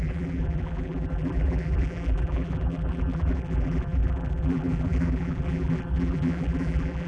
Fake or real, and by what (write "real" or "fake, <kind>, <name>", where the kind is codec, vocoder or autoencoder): fake, vocoder, BigVGAN v2